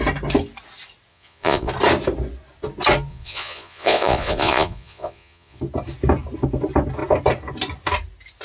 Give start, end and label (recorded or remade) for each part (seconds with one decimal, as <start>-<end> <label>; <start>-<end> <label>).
0.0-1.1 recorded; 1.1-1.7 remade; 1.7-3.1 recorded; 3.1-5.6 remade; 5.6-8.4 recorded